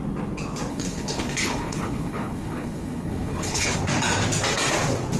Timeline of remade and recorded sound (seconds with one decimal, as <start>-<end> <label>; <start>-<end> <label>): 0.0-0.7 recorded; 0.7-3.8 remade; 3.8-5.2 recorded